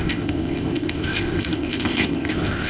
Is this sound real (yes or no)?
no